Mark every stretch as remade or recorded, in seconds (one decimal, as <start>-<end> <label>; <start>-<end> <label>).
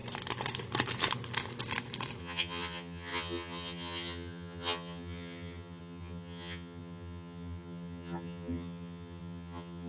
0.0-2.2 recorded; 2.2-9.9 remade